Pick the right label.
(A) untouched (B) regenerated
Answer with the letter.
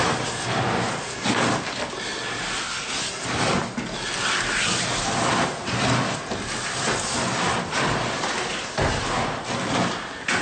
A